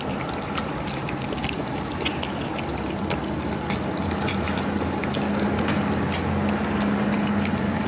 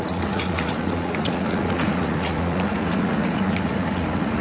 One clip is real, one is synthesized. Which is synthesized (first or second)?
second